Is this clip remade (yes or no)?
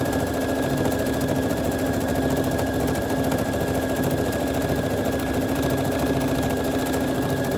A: no